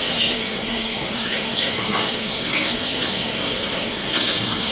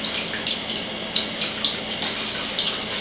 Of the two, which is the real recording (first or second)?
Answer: second